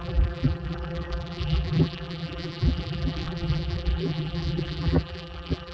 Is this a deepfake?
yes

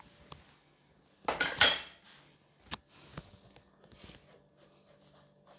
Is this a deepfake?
no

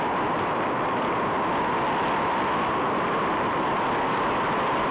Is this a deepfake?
no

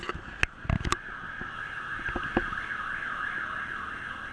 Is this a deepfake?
no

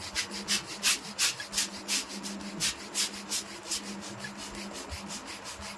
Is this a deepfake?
no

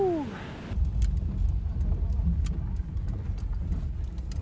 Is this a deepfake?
no